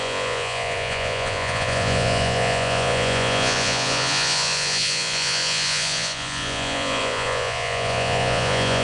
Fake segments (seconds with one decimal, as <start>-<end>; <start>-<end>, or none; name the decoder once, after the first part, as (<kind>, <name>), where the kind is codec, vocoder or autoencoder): 0.0-8.8 (vocoder, Vocos)